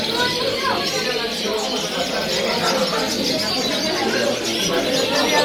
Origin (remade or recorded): recorded